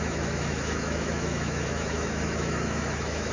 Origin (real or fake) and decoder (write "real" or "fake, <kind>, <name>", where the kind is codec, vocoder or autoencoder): fake, autoencoder, DAC-VAE